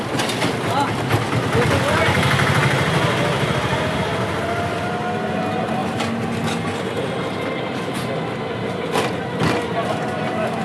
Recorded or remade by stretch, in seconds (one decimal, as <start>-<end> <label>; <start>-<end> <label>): 0.0-10.6 recorded